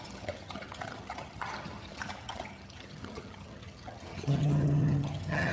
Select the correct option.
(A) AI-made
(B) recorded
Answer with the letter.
A